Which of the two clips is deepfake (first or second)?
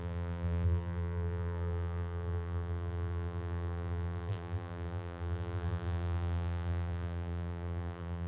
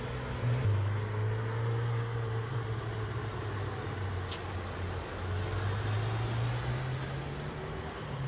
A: first